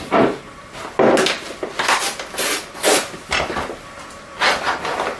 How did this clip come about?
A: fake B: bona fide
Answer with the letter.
B